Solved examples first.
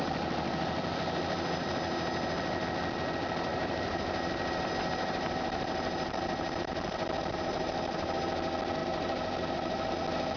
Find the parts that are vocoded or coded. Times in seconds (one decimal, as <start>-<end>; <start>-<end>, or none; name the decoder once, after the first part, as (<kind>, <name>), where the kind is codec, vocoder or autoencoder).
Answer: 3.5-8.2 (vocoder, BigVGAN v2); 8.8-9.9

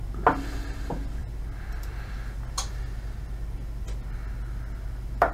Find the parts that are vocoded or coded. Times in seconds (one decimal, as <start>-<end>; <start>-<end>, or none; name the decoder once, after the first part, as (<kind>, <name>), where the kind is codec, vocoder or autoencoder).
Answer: none

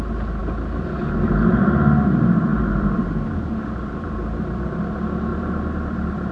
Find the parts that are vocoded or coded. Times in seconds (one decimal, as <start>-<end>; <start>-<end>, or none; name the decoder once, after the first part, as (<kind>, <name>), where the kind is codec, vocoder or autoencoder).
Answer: 2.5-3.6 (vocoder, BigVGAN v2); 5.3-6.3

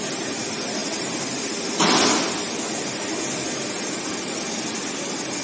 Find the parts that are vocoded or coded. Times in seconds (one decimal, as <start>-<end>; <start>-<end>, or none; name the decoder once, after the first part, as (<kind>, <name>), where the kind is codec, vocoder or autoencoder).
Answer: none